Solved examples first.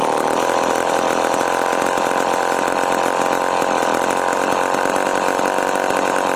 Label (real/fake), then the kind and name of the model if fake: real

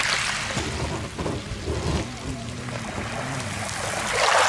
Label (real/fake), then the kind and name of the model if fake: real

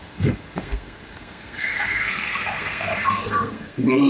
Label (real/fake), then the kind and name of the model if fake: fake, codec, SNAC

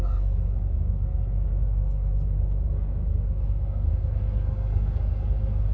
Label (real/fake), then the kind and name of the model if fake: fake, codec, SNAC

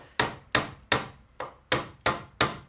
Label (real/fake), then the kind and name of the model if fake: real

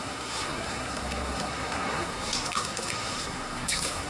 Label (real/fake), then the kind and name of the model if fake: fake, codec, SNAC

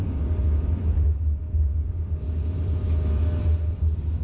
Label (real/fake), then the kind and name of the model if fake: real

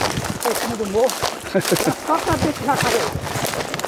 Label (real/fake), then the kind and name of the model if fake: real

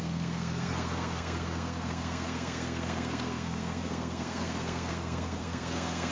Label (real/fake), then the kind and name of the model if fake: fake, codec, SNAC